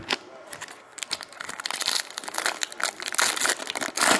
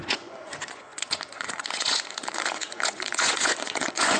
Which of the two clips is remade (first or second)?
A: second